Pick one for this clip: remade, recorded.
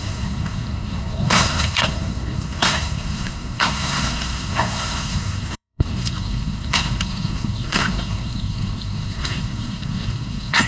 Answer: remade